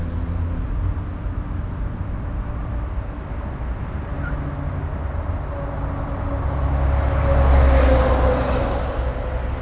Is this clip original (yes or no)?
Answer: yes